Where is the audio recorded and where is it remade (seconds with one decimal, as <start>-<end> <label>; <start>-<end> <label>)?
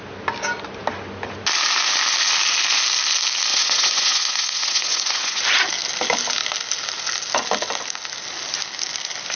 0.0-3.5 recorded; 3.5-5.4 remade; 5.4-9.4 recorded